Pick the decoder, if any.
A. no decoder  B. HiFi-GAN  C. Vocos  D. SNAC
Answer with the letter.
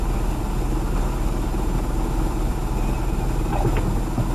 A